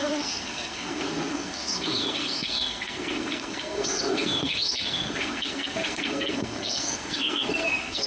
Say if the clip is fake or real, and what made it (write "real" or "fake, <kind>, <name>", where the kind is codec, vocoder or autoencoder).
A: fake, codec, SNAC